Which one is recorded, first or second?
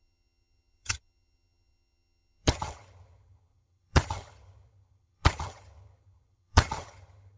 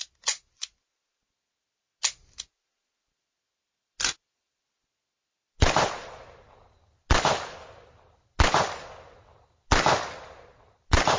second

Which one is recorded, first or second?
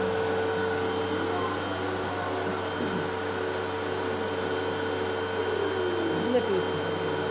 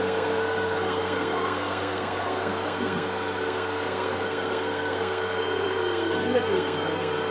first